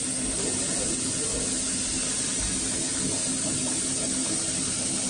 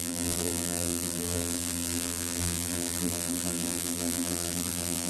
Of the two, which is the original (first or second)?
first